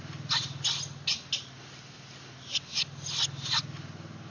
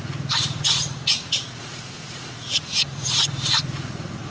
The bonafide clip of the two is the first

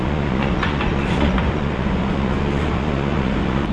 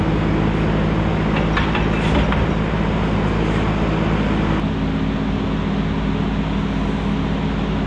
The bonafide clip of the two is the second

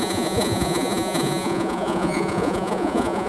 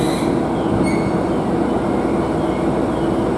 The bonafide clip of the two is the second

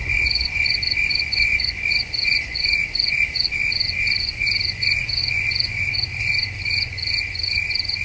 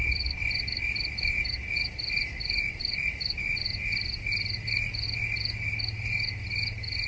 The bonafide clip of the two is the second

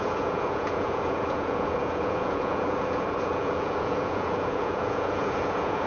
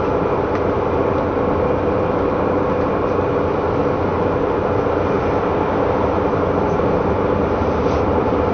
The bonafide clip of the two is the second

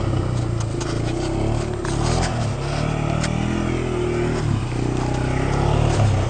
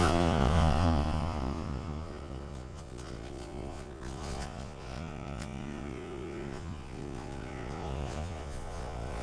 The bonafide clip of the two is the first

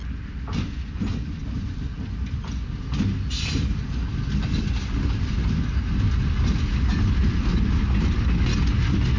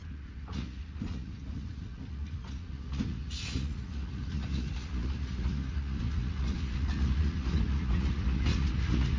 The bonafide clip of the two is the first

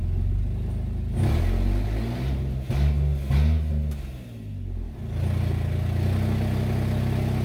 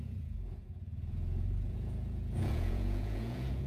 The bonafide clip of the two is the first